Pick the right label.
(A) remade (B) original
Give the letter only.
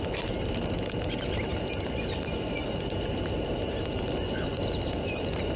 A